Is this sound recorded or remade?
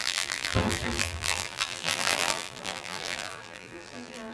remade